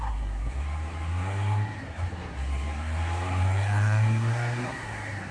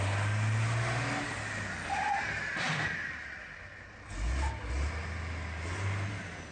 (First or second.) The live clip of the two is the second